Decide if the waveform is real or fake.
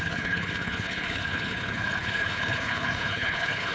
fake